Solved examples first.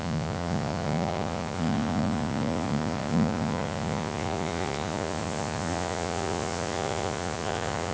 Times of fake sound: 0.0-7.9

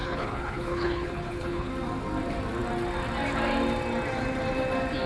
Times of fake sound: 0.0-1.7

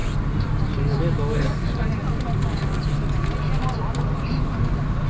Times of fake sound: none

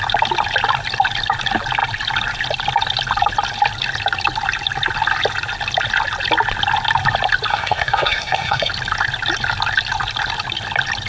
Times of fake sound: 7.5-8.7